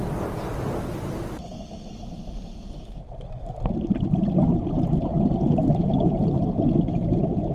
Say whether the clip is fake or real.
real